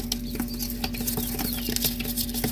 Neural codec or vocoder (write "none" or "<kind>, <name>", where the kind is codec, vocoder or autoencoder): none